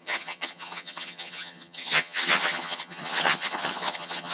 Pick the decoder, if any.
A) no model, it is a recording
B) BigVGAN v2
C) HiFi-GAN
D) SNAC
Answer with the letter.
C